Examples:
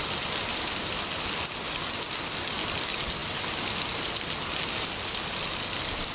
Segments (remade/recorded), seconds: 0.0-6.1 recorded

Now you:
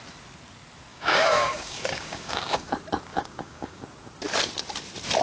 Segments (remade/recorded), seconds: 0.0-0.9 recorded; 0.9-2.7 remade; 2.7-3.1 recorded; 3.1-3.8 remade; 3.8-5.2 recorded

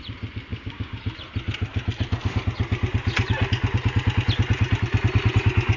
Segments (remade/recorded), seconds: 0.0-0.5 recorded; 0.5-1.0 remade; 1.0-5.8 recorded

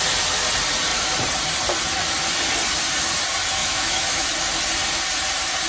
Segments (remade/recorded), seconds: 0.0-3.6 recorded; 3.6-4.3 remade; 4.3-5.7 recorded

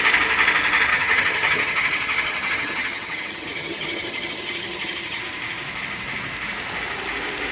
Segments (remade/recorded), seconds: 0.0-0.9 recorded; 0.9-5.2 remade; 5.2-7.5 recorded